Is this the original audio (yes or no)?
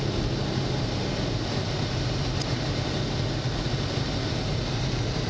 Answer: yes